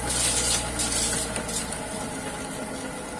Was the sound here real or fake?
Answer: real